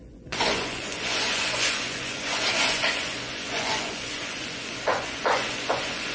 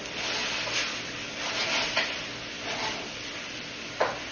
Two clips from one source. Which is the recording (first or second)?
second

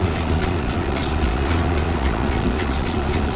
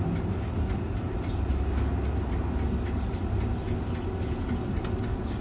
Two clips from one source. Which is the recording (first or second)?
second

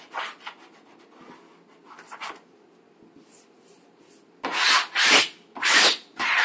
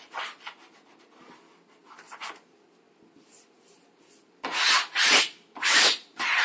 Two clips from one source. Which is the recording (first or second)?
first